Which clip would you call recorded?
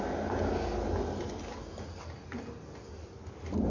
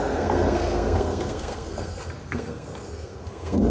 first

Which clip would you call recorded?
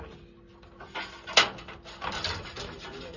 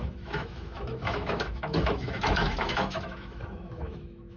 first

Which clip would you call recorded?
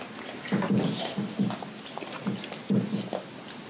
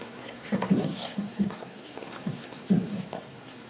first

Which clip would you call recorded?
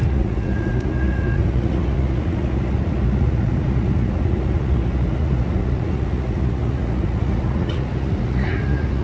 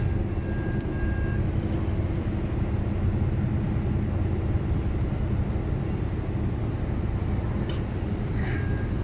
second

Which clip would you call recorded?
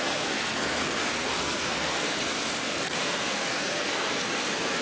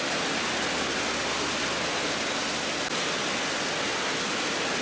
second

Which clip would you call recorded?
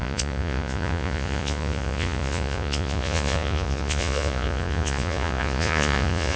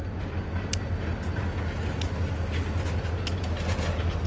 second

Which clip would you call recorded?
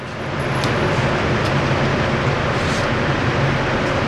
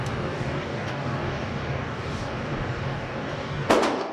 first